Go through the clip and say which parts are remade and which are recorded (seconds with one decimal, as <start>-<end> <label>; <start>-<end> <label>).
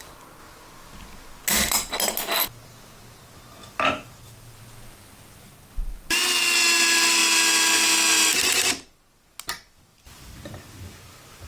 0.0-3.6 recorded; 3.6-4.6 remade; 4.6-9.9 recorded; 9.9-11.5 remade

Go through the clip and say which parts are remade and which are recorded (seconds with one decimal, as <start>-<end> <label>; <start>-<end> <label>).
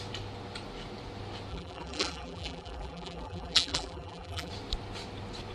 0.0-1.5 recorded; 1.5-4.5 remade; 4.5-5.5 recorded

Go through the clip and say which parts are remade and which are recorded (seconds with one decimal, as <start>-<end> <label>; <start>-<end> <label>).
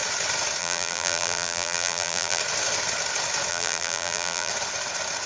0.0-0.6 recorded; 0.6-2.4 remade; 2.4-3.5 recorded; 3.5-4.5 remade; 4.5-5.3 recorded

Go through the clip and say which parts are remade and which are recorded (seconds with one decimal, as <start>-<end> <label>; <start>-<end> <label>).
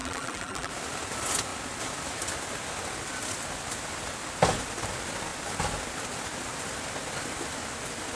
0.0-0.7 remade; 0.7-8.2 recorded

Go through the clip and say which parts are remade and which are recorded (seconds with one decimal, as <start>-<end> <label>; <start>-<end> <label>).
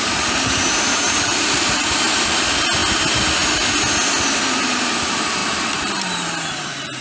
0.0-2.8 remade; 2.8-4.8 recorded; 4.8-7.0 remade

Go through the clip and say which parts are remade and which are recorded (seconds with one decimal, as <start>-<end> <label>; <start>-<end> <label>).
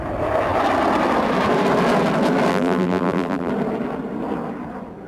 0.0-2.5 recorded; 2.5-3.5 remade; 3.5-5.1 recorded